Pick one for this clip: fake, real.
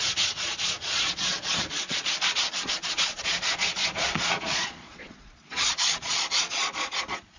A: fake